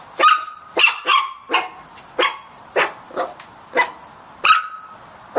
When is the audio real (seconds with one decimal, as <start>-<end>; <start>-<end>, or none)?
0.0-5.4